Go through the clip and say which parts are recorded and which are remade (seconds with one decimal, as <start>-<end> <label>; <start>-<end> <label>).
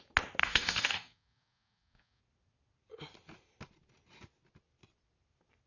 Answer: 0.0-0.4 recorded; 0.4-2.2 remade; 2.2-5.7 recorded